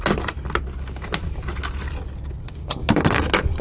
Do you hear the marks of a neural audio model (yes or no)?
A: no